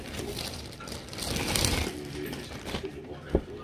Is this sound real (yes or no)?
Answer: no